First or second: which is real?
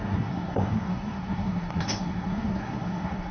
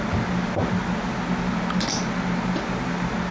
second